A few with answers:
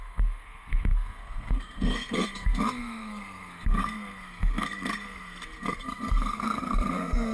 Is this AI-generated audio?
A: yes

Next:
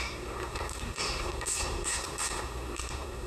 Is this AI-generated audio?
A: yes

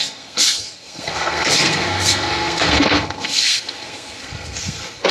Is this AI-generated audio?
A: yes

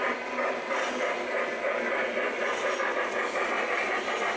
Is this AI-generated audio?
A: no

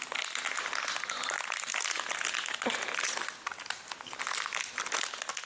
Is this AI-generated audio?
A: no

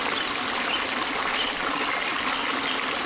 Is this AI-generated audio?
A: no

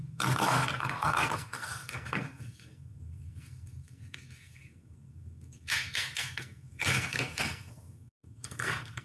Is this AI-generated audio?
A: yes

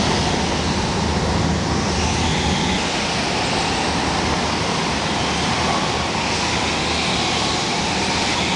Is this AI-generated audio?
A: no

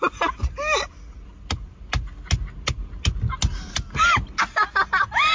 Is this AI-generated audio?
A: no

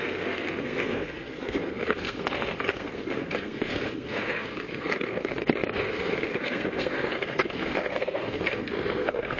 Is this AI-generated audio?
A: yes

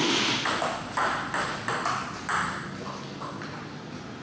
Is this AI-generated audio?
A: no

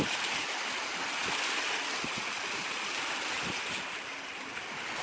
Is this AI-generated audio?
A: no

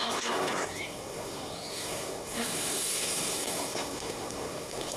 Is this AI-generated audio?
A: yes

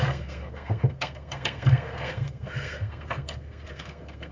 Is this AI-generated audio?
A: yes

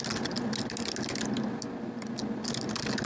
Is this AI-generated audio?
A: no